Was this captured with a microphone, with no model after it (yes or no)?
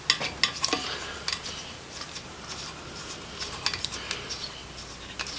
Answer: yes